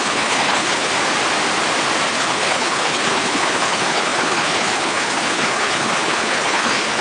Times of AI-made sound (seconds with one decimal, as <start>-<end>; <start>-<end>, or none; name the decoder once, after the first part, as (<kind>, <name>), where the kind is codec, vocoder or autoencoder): 0.0-0.9 (codec, HILCodec); 2.1-7.0